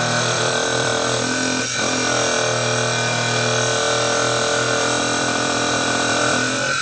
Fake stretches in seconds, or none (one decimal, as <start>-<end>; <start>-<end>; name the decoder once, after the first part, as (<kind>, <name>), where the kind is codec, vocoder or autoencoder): 0.0-0.9 (vocoder, BigVGAN v2); 5.0-6.8